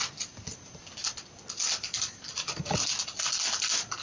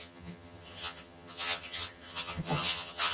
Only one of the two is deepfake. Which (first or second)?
second